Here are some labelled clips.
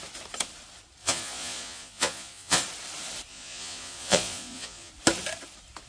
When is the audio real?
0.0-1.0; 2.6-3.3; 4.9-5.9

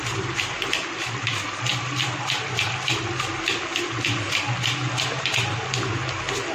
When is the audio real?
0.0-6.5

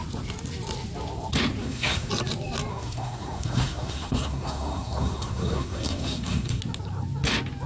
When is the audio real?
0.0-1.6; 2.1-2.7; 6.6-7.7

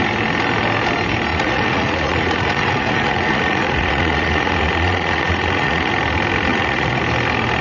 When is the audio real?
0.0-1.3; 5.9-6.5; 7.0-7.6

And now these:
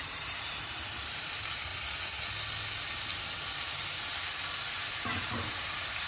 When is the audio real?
1.7-5.1

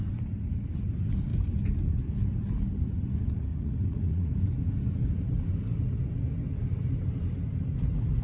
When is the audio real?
0.0-3.5; 4.3-8.2

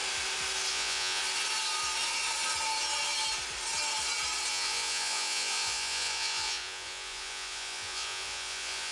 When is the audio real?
0.0-0.7; 1.2-4.5

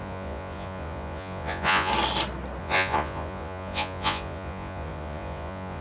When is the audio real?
1.9-2.6